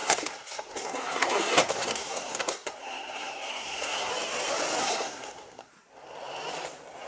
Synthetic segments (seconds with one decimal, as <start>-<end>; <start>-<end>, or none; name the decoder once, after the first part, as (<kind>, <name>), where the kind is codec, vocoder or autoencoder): 0.0-4.1 (codec, SNAC); 4.8-5.7